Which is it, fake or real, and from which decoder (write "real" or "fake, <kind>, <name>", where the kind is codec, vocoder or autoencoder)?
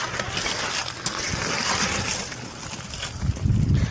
real